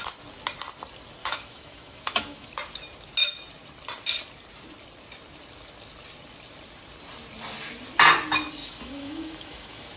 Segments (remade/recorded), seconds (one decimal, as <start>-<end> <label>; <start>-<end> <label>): 0.0-1.2 recorded; 1.2-2.5 remade; 2.5-8.6 recorded; 8.6-10.0 remade